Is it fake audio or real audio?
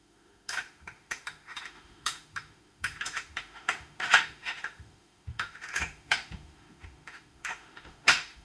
fake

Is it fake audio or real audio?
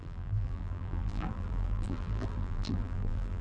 fake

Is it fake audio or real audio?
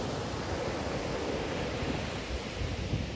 real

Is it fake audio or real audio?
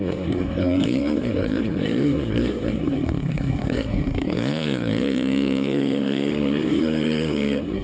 fake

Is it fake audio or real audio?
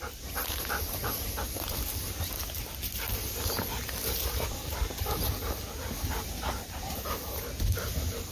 real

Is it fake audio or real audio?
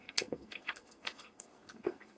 fake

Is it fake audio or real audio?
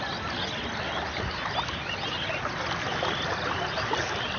real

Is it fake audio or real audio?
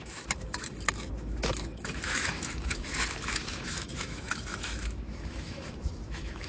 fake